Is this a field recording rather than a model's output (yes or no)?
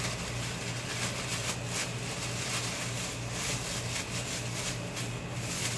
yes